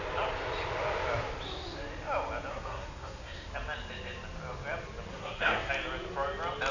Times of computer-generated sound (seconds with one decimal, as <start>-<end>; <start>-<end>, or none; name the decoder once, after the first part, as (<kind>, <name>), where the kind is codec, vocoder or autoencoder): 2.5-3.5 (codec, SNAC); 5.1-5.7